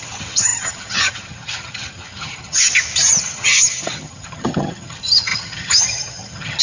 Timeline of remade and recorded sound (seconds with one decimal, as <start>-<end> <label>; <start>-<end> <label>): 0.0-2.7 remade; 2.7-3.2 recorded; 3.2-6.6 remade